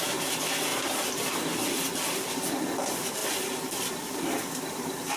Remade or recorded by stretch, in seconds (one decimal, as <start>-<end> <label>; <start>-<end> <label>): 0.0-5.2 recorded